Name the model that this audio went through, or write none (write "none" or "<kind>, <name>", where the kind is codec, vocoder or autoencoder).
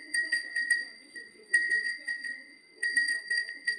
vocoder, WaveNeXt